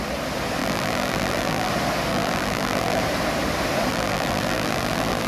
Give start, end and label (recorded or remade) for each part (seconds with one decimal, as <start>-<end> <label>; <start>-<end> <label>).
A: 0.0-0.6 recorded; 0.6-1.7 remade; 1.7-2.1 recorded; 2.1-3.0 remade; 3.0-3.9 recorded; 3.9-5.3 remade